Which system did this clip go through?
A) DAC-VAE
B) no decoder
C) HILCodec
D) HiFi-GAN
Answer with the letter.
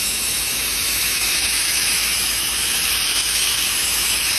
A